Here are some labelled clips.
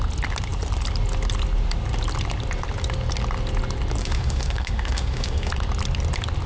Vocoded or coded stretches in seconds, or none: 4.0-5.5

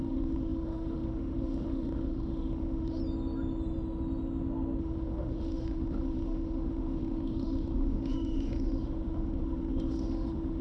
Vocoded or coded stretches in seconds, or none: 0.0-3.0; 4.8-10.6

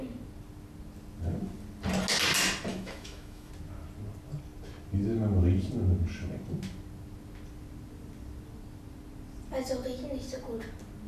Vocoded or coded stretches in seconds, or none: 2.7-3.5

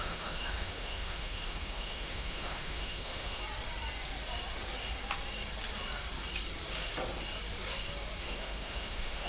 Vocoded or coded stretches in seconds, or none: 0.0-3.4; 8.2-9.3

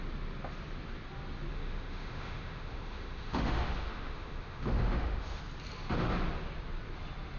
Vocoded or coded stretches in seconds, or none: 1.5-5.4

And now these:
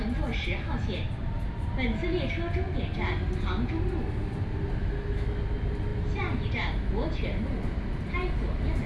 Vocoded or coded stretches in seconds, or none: 4.8-5.4